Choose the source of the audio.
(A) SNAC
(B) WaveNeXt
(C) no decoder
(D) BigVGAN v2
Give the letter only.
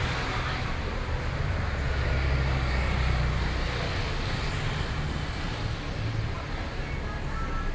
C